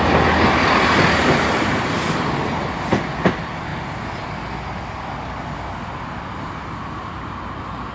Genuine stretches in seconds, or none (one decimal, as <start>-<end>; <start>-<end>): 0.0-7.9